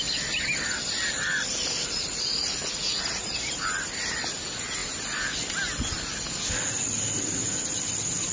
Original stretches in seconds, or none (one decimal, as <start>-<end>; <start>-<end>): 0.0-1.8; 3.0-8.3